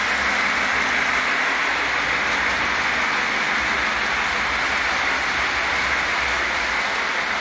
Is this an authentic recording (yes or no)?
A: yes